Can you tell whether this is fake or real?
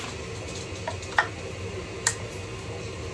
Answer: real